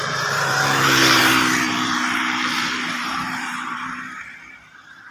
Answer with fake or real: fake